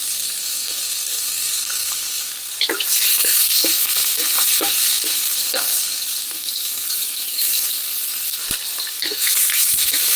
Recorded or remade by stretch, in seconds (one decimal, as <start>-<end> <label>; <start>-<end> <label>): 0.0-2.5 remade; 2.5-3.1 recorded; 3.1-8.4 remade; 8.4-8.9 recorded; 8.9-10.2 remade